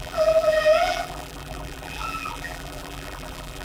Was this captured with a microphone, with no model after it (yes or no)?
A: no